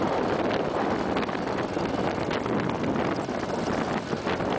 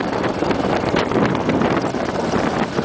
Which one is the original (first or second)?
first